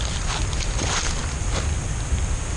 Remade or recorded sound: recorded